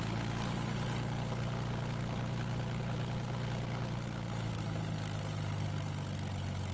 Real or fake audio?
real